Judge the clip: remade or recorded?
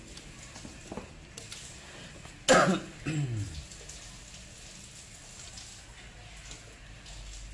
recorded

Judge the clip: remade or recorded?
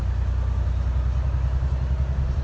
recorded